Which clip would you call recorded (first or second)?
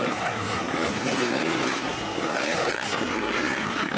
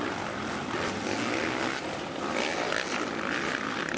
second